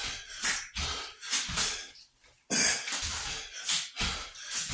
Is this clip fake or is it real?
real